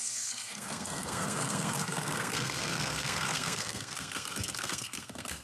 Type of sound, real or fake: fake